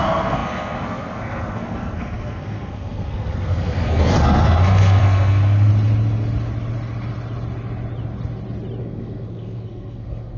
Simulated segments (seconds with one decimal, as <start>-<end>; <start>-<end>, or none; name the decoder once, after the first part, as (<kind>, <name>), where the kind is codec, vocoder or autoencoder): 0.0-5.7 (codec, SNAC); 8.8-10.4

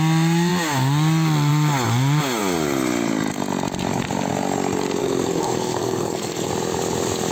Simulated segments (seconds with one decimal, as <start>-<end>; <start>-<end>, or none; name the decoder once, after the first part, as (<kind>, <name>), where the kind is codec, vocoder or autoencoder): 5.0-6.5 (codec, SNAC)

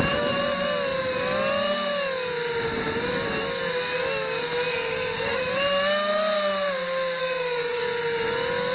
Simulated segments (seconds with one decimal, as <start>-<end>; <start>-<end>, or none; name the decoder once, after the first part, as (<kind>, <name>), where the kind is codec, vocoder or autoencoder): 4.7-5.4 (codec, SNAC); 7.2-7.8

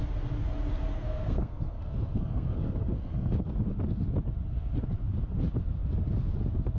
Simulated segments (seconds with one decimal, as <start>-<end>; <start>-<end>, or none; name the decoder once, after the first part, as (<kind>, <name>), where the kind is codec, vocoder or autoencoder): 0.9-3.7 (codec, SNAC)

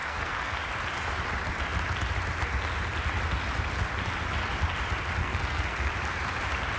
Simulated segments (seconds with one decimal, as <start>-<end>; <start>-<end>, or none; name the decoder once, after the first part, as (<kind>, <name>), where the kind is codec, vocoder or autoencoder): 0.0-0.6 (codec, SNAC); 5.2-5.9